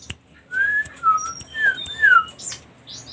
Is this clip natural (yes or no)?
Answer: yes